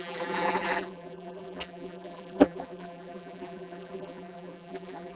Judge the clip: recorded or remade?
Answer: remade